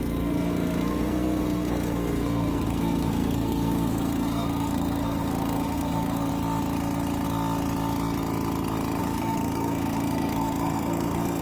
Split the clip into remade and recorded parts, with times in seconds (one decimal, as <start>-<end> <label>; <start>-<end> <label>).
0.0-6.3 remade; 6.3-9.0 recorded; 9.0-11.4 remade